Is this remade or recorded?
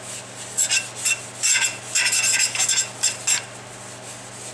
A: recorded